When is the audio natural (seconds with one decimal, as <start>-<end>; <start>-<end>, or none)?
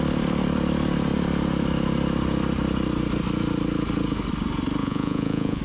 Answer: 0.0-4.8